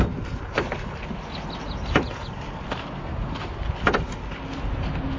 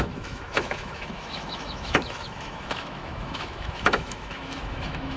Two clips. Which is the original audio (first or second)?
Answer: first